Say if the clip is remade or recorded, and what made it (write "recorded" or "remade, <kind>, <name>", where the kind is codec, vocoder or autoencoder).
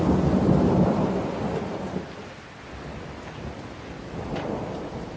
recorded